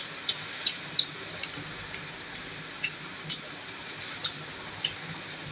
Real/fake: real